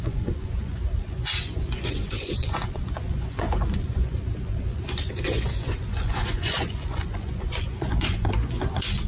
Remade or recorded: remade